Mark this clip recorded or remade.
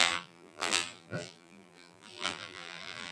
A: remade